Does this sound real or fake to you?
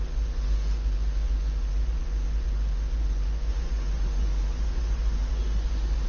fake